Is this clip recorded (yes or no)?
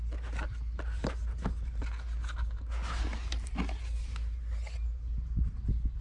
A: yes